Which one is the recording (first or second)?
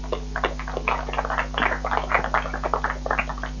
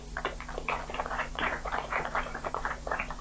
first